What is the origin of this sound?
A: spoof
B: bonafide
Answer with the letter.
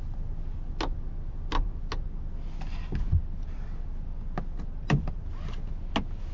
B